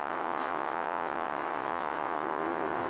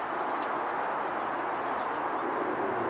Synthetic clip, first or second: first